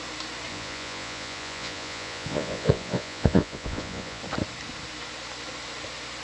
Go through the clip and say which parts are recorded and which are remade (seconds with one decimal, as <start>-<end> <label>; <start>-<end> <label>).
0.0-0.5 recorded; 0.5-4.2 remade; 4.2-6.2 recorded

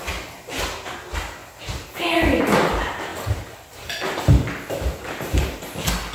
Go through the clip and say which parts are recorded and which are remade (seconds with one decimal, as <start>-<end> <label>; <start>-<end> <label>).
0.0-6.1 recorded